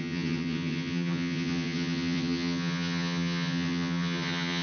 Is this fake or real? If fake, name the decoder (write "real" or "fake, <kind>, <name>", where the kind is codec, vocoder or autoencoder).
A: fake, vocoder, HiFi-GAN